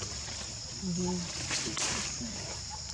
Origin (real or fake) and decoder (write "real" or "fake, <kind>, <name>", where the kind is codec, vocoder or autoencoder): fake, vocoder, BigVGAN v2